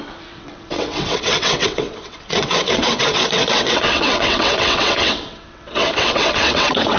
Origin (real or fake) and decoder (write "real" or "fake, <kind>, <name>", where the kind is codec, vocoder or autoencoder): fake, vocoder, WaveNeXt